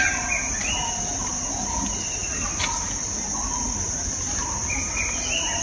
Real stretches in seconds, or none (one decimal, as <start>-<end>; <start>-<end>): 0.0-5.6